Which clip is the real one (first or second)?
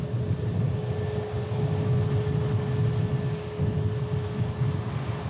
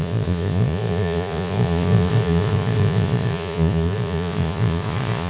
first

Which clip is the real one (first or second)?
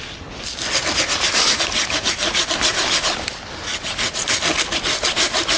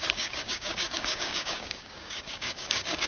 first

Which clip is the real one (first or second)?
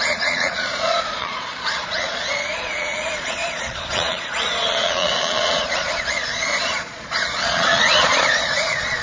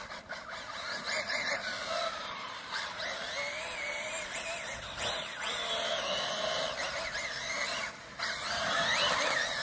second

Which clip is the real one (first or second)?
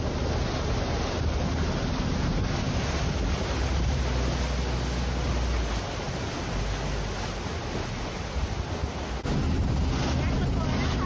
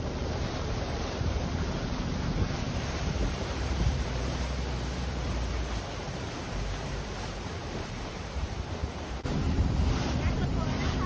first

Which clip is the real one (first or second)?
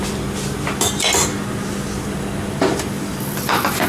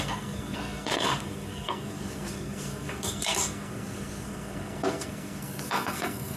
first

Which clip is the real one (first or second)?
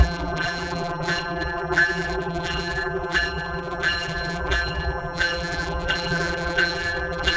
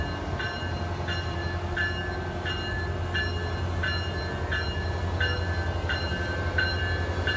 second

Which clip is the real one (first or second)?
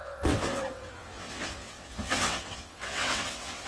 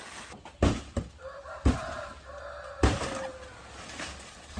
second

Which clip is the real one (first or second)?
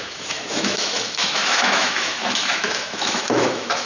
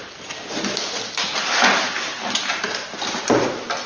second